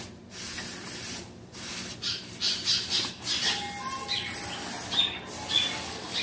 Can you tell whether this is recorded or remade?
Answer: recorded